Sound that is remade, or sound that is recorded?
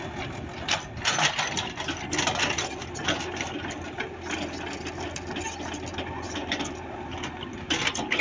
recorded